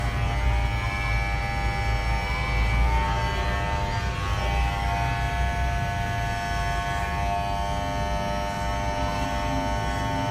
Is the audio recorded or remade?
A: recorded